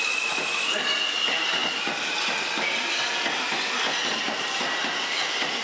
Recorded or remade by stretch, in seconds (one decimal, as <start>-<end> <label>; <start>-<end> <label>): 0.0-5.6 recorded